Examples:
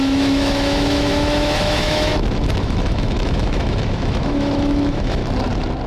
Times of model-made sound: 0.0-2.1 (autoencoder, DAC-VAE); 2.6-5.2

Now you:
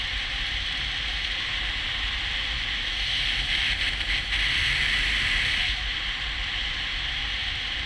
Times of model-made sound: none